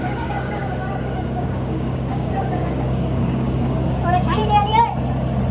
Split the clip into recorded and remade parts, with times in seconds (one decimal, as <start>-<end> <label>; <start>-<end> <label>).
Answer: 0.0-4.4 remade; 4.4-5.5 recorded